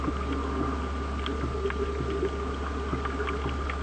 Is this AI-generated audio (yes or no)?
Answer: no